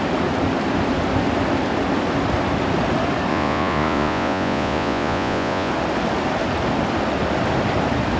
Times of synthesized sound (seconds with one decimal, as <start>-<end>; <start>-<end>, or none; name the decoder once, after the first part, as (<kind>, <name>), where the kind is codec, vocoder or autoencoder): 3.3-5.7 (vocoder, Vocos)